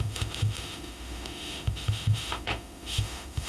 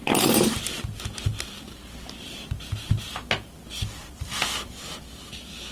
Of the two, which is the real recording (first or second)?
second